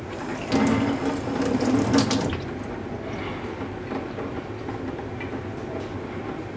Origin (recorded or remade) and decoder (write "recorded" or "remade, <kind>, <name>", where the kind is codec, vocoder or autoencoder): recorded